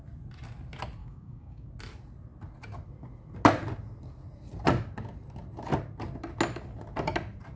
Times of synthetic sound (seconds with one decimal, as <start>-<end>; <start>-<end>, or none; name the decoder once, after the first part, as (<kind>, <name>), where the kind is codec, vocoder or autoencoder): 1.0-1.7 (codec, DAC)